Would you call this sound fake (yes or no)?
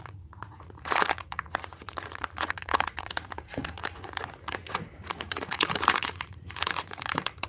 yes